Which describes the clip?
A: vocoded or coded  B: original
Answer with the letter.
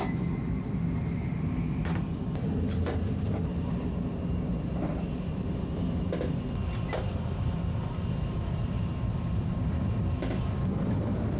B